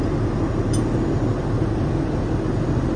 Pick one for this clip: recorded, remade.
recorded